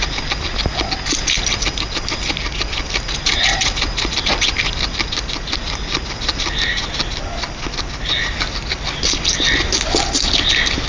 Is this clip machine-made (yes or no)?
no